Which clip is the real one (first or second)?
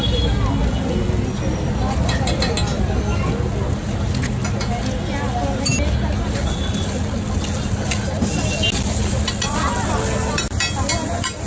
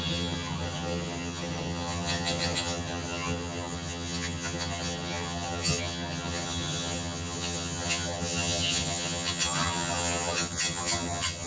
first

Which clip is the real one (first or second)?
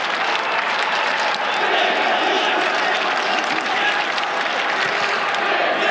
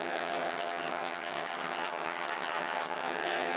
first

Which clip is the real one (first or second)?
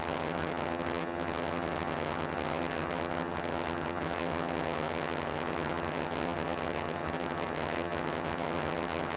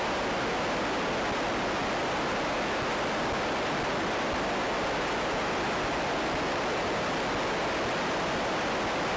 second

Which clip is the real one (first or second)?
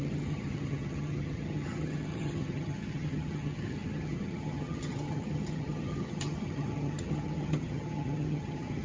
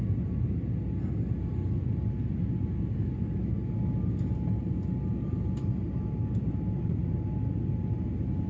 second